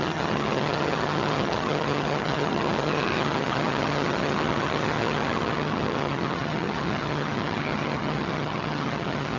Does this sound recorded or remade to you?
remade